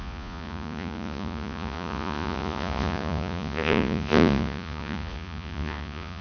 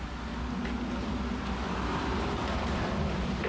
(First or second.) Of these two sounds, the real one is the second